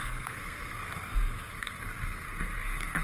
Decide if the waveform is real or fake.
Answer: fake